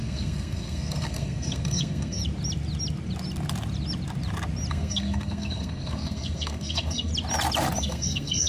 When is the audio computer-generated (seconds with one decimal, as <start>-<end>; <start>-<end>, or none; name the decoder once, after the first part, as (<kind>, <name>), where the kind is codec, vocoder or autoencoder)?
0.0-2.2 (codec, SNAC); 4.7-7.1; 7.8-8.5